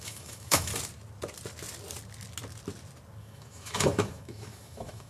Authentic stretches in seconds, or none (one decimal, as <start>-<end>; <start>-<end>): 0.7-3.2